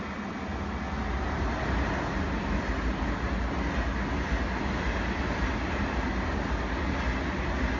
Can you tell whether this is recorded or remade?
recorded